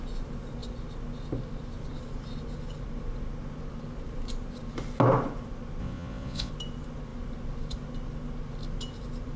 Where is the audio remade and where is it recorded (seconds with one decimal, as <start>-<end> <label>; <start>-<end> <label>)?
0.0-5.8 recorded; 5.8-6.5 remade; 6.5-9.4 recorded